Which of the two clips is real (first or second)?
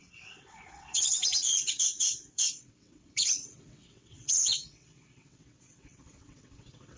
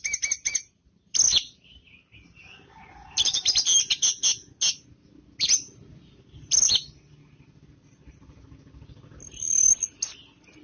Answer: second